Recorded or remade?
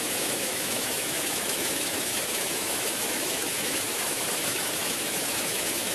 remade